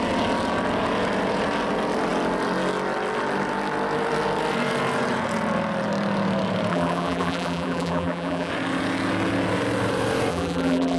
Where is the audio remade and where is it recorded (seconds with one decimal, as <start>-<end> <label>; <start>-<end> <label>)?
0.0-6.7 recorded; 6.7-8.5 remade; 8.5-10.3 recorded; 10.3-11.0 remade